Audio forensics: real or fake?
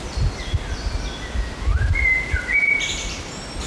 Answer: real